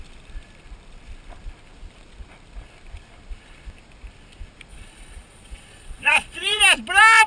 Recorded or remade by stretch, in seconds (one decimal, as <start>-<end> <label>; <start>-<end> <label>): 0.0-4.7 recorded; 4.7-6.6 remade; 6.6-7.3 recorded